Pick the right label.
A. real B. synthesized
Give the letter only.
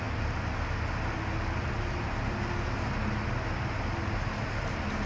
A